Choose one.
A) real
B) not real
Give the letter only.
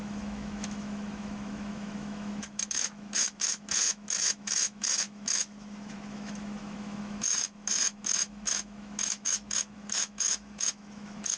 B